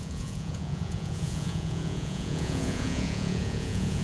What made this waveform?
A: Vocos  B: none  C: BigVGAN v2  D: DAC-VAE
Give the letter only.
A